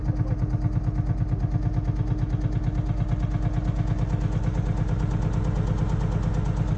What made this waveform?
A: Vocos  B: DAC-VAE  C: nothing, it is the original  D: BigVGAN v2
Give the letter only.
C